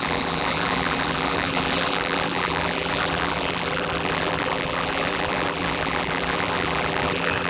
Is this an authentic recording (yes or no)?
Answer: no